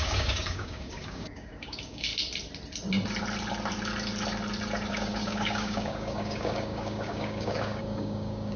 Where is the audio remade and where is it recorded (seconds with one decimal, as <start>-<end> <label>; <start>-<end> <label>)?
0.0-2.1 remade; 2.1-4.9 recorded; 4.9-8.6 remade